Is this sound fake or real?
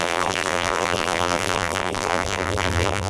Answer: fake